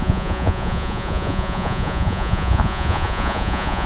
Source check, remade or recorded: remade